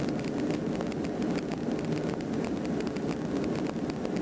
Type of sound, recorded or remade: recorded